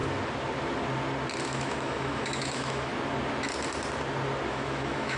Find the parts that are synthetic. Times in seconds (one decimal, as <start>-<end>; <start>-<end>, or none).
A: 1.4-2.9; 4.5-5.2